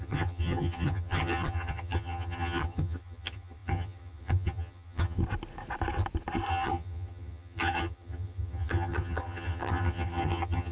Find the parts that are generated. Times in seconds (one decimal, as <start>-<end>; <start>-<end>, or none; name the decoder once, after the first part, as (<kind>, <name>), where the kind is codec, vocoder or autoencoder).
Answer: 0.0-5.2 (vocoder, HiFi-GAN); 6.5-10.7